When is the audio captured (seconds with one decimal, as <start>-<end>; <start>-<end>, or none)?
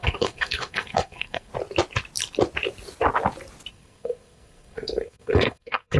1.5-3.7